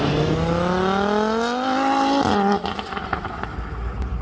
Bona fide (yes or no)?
yes